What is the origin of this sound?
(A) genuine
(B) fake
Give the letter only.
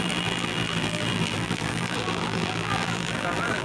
B